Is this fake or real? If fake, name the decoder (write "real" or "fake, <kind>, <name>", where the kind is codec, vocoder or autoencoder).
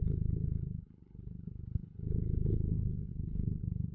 fake, codec, HILCodec